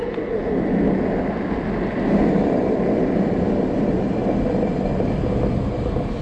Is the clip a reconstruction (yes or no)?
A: no